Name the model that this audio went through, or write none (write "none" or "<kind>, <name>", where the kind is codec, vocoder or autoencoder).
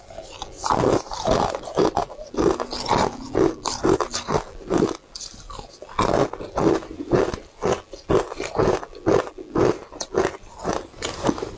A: none